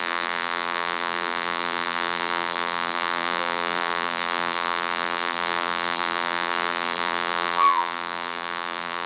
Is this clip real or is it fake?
fake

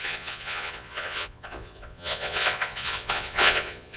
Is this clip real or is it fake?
fake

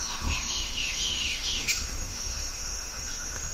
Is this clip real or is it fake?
fake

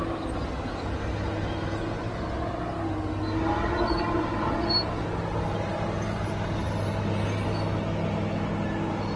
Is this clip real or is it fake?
real